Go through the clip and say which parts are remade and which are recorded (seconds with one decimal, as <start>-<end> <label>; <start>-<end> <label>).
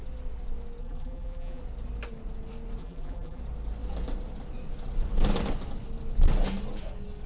0.0-0.8 recorded; 0.8-1.6 remade; 1.6-2.8 recorded; 2.8-3.4 remade; 3.4-7.3 recorded